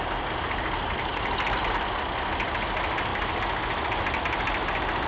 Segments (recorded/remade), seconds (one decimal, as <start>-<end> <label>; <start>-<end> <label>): 0.0-5.1 recorded